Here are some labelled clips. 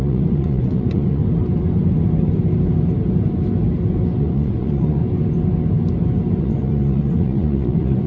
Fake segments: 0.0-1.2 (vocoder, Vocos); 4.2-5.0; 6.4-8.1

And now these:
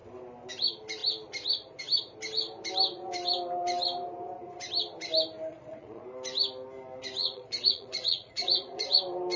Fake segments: 5.5-6.0 (vocoder, Vocos); 7.2-9.0

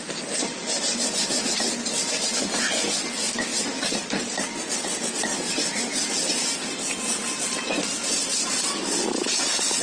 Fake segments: none

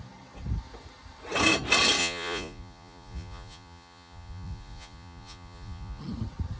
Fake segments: 2.0-6.0 (vocoder, Vocos)

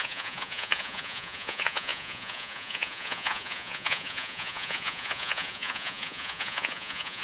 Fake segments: 0.0-7.2 (vocoder, Vocos)

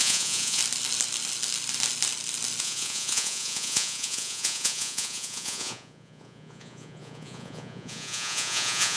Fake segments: 0.0-0.6 (vocoder, Vocos); 2.6-9.0